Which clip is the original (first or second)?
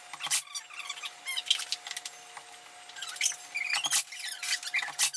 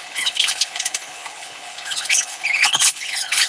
first